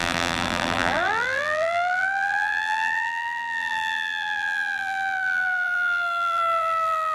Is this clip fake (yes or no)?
yes